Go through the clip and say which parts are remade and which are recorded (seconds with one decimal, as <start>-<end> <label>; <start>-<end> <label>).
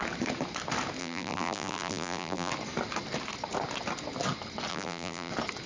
0.0-1.0 recorded; 1.0-2.5 remade; 2.5-4.7 recorded; 4.7-5.3 remade; 5.3-5.7 recorded